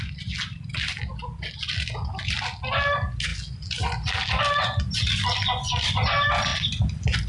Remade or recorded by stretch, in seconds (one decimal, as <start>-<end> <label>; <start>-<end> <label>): 0.0-7.3 recorded